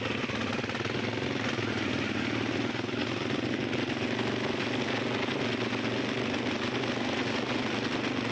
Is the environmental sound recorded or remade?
recorded